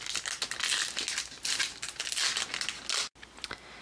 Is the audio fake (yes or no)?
no